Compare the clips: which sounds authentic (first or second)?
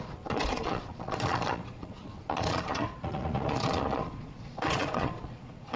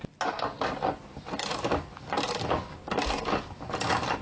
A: second